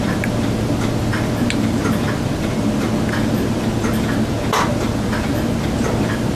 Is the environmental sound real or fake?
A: real